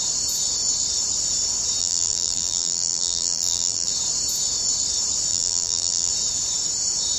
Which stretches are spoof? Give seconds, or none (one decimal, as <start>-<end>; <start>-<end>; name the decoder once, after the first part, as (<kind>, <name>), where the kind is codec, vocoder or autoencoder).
1.8-3.9 (vocoder, BigVGAN v2); 5.3-6.1